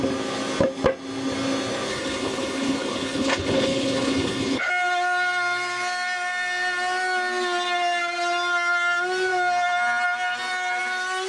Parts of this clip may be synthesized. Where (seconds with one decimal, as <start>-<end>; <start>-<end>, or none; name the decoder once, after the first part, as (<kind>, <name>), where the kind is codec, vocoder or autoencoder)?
1.9-4.7 (codec, HILCodec)